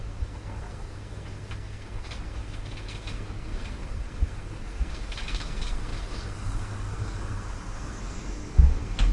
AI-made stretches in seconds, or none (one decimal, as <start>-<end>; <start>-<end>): 0.0-9.1